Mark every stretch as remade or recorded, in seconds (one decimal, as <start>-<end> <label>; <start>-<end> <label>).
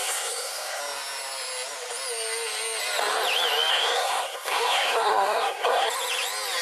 0.0-0.8 remade; 0.8-3.7 recorded; 3.7-5.9 remade; 5.9-6.6 recorded